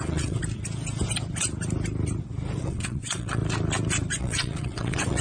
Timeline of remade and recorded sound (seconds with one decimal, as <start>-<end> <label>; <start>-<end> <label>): 0.0-0.4 remade; 0.4-2.6 recorded; 2.6-3.4 remade; 3.4-4.2 recorded; 4.2-5.2 remade